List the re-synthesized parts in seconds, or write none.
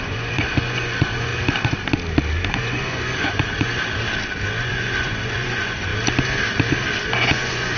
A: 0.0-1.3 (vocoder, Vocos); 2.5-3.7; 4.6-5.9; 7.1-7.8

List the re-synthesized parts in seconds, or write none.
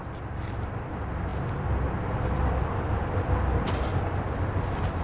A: none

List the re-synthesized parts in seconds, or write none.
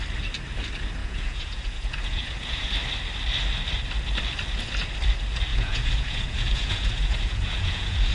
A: 1.0-2.7 (vocoder, Vocos); 5.5-8.1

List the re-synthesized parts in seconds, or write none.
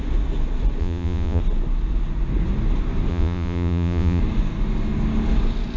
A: 0.8-1.4 (vocoder, Vocos); 3.1-4.2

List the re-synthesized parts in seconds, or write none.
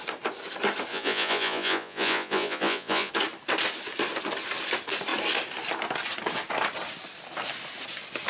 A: 0.9-3.1 (vocoder, Vocos)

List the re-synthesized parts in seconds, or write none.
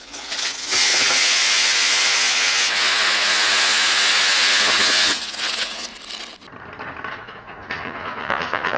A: 0.0-5.9 (vocoder, Vocos); 7.1-8.8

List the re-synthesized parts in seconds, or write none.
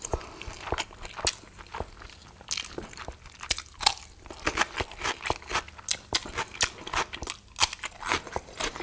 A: none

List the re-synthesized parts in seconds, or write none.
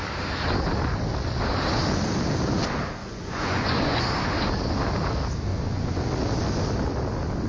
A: 3.0-4.0 (vocoder, Vocos); 5.5-6.0